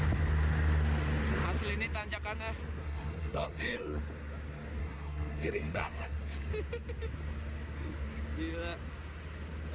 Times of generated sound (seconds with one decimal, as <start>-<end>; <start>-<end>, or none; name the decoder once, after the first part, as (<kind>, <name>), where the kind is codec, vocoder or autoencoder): 2.8-4.0 (codec, SNAC); 4.8-6.5